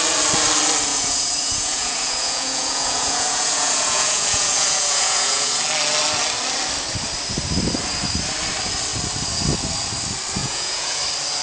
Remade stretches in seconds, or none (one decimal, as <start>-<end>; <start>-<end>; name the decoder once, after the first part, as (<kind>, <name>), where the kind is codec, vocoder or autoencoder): 0.9-5.6 (vocoder, Vocos); 10.4-11.0